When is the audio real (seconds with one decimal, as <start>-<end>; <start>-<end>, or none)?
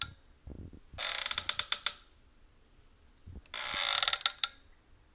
0.0-5.1